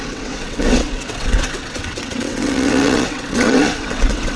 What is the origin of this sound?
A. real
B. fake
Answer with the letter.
B